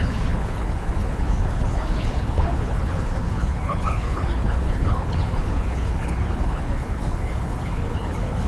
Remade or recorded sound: remade